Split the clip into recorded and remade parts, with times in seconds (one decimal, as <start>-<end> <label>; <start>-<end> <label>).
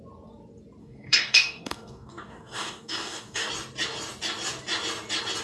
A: 0.0-0.8 recorded; 0.8-3.5 remade; 3.5-5.4 recorded